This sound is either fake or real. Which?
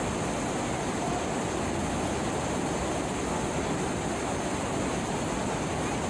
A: real